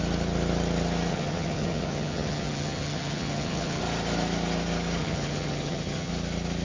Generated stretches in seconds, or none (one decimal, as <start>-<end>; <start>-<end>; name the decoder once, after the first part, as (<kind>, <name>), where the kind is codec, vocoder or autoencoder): 1.1-3.8 (vocoder, HiFi-GAN); 5.0-6.1